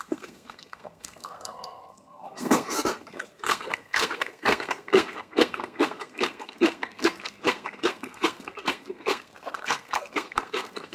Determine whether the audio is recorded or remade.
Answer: remade